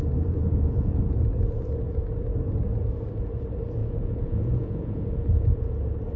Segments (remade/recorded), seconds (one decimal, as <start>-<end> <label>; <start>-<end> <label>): 0.0-0.4 recorded; 0.4-1.0 remade; 1.0-3.8 recorded; 3.8-5.7 remade; 5.7-6.2 recorded